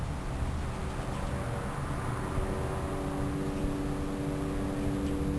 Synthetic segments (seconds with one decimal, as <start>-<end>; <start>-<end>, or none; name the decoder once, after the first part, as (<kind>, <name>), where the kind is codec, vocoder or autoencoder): none